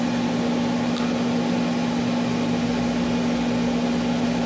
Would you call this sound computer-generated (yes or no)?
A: no